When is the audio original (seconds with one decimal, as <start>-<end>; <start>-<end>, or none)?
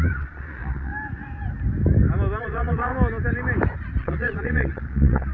0.9-2.4; 2.9-4.0